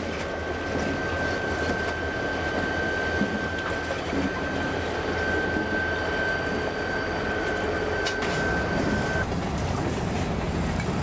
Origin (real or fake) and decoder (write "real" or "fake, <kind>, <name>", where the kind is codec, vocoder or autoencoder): real